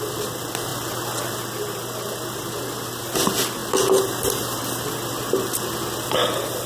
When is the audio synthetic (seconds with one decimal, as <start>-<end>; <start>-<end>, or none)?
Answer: none